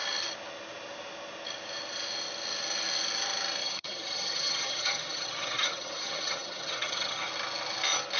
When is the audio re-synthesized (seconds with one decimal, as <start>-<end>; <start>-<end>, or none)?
3.6-7.3